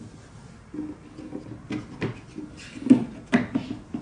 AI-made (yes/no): no